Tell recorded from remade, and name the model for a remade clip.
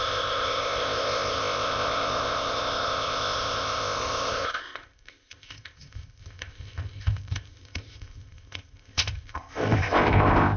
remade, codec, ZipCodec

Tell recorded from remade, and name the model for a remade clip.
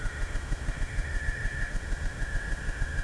remade, autoencoder, DAC-VAE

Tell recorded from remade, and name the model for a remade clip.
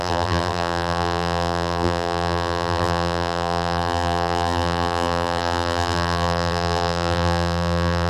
remade, vocoder, BigVGAN v2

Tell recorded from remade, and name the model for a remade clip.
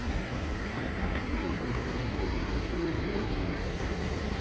remade, codec, SNAC